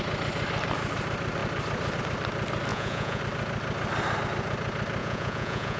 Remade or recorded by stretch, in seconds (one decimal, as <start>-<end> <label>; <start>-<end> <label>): 0.0-2.7 recorded; 2.7-3.2 remade; 3.2-5.0 recorded; 5.0-5.8 remade